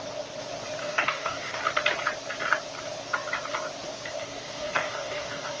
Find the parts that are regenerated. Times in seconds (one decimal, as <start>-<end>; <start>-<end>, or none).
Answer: 0.8-1.6; 4.2-5.6